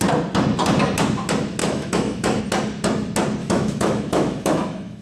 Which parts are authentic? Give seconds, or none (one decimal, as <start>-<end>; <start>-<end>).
0.0-1.6; 2.4-3.4